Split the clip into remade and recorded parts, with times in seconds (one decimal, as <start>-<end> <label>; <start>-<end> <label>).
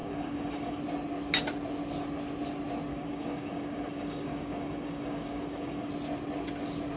0.0-0.8 remade; 0.8-2.9 recorded; 2.9-5.9 remade; 5.9-7.0 recorded